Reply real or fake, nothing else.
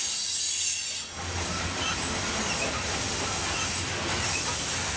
real